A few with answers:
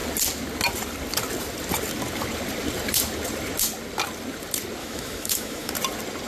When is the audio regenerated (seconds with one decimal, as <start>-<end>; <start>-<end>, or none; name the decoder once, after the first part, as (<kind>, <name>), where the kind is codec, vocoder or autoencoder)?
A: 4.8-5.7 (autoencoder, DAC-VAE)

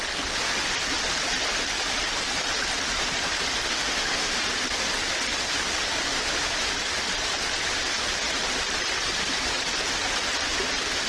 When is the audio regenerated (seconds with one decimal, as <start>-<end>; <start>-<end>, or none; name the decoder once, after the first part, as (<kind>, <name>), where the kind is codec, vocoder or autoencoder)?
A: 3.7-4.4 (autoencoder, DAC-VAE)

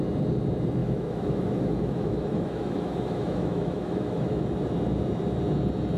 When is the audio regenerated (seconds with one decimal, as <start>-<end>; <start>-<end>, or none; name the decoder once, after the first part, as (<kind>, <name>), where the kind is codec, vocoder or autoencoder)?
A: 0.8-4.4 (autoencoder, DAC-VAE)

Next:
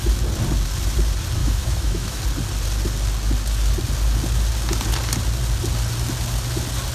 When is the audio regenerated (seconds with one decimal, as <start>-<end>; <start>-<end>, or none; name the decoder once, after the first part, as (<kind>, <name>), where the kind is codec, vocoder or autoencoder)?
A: 1.4-2.2 (autoencoder, DAC-VAE)